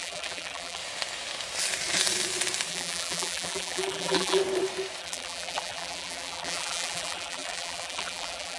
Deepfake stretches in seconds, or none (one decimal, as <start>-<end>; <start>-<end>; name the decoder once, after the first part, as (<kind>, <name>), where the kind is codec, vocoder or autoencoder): 0.0-0.8 (vocoder, BigVGAN v2); 2.7-4.4; 5.0-8.6